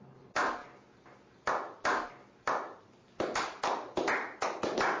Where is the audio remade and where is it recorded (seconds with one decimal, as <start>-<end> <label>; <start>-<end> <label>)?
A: 0.0-5.0 recorded